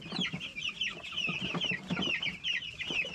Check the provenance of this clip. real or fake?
fake